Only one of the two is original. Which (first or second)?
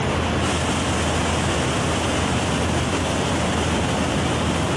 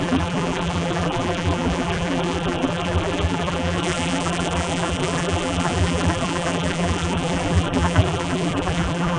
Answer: first